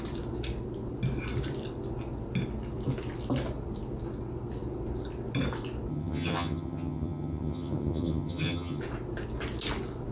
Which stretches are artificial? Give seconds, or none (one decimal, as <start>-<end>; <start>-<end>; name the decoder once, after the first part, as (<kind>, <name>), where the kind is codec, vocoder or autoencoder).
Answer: 5.9-8.8 (vocoder, HiFi-GAN)